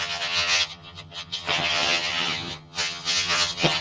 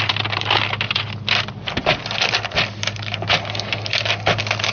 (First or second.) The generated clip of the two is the first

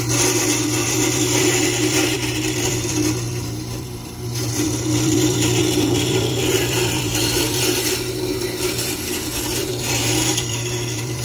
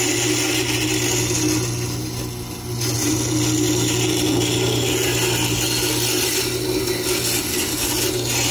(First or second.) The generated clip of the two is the first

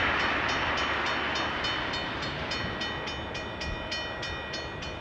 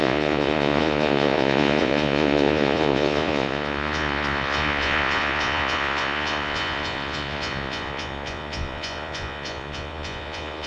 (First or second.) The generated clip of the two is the second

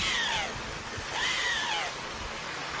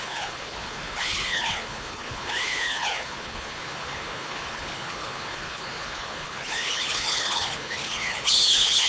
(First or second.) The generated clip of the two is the second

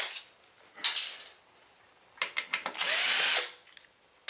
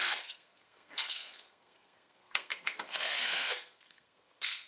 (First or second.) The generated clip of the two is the second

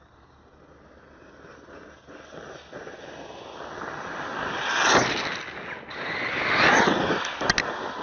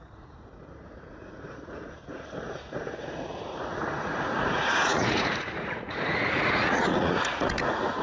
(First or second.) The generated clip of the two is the second